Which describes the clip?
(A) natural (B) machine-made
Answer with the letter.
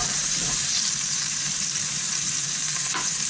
B